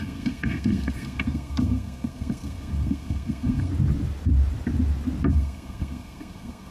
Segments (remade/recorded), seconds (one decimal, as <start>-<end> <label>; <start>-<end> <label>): 0.0-3.7 remade; 3.7-5.3 recorded; 5.3-6.7 remade